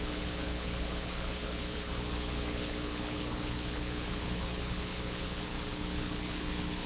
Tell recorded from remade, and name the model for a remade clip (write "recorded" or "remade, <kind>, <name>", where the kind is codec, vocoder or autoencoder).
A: remade, codec, HILCodec